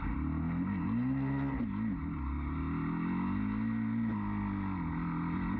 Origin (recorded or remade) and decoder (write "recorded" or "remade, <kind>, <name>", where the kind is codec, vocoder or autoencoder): recorded